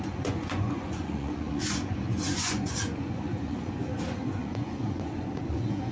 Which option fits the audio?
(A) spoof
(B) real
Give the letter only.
A